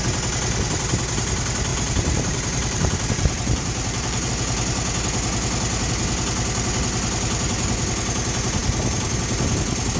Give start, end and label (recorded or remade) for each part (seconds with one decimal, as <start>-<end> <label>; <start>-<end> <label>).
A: 0.0-1.7 recorded; 1.7-4.3 remade; 4.3-10.0 recorded